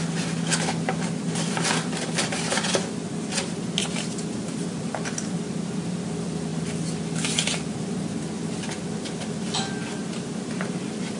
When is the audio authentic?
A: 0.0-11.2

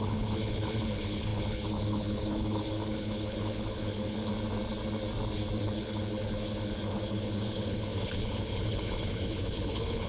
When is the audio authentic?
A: 4.3-5.6

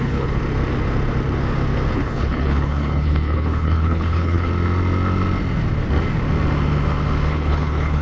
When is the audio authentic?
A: 0.4-1.9; 4.5-7.3

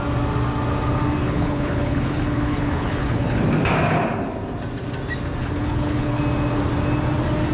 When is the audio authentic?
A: 0.0-1.2; 3.4-5.4; 6.2-7.5

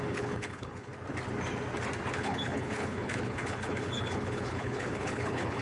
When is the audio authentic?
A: 0.9-2.1

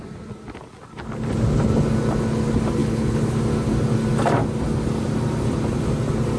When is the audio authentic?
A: 0.0-2.8; 3.4-6.4

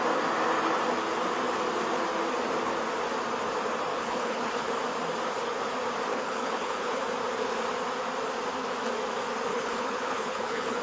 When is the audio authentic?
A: 0.0-3.9; 4.7-6.1; 7.0-9.5